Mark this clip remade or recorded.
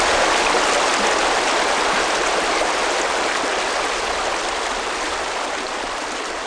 recorded